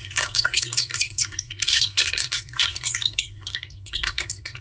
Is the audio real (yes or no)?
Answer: no